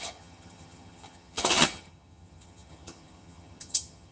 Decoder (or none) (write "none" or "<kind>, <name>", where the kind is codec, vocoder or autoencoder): vocoder, HiFi-GAN